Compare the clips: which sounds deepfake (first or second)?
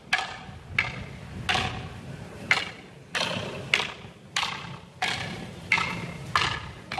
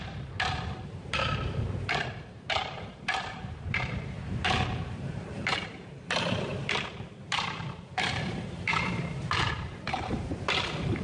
second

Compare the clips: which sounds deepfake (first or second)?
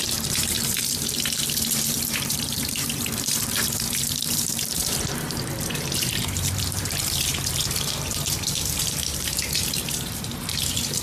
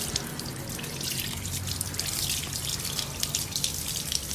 first